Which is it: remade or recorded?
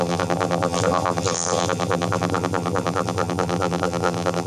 remade